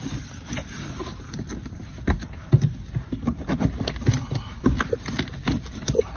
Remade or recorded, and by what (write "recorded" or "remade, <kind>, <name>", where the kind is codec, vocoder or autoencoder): recorded